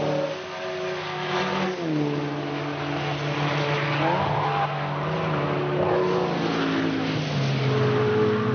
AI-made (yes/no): no